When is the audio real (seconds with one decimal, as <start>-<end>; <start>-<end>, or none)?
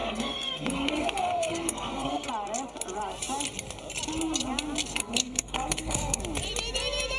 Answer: 2.3-4.9; 6.2-7.2